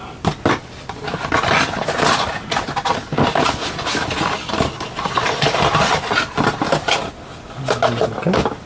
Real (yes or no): yes